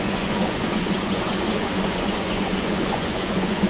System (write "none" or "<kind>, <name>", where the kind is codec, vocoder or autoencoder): vocoder, Vocos